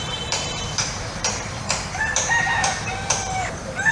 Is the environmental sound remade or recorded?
remade